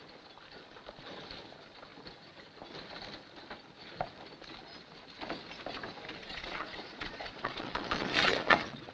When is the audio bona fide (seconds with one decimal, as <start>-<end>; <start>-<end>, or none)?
0.0-6.2